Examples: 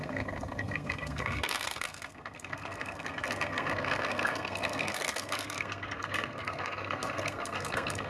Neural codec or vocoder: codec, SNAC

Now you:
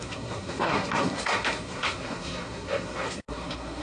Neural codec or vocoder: codec, SNAC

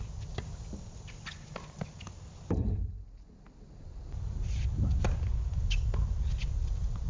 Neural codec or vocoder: none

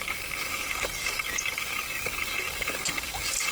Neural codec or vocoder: codec, DAC